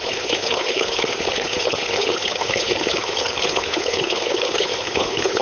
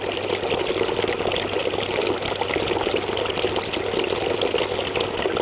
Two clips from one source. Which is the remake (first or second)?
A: first